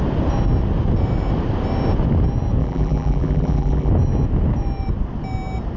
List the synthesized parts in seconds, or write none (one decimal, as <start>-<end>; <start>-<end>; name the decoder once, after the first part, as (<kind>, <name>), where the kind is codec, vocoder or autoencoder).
2.6-3.9 (vocoder, BigVGAN v2)